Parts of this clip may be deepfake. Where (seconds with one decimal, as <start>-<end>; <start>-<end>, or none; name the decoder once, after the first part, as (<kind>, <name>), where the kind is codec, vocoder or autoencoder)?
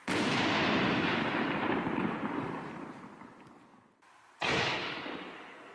0.0-5.7 (vocoder, BigVGAN v2)